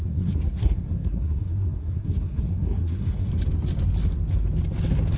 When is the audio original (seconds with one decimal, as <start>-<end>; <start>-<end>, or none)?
3.3-5.2